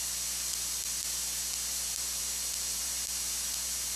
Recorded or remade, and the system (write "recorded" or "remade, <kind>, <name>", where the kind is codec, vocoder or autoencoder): recorded